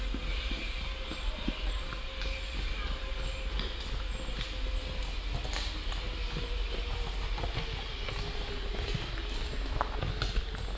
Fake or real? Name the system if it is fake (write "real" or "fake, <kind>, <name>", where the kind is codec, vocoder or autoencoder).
real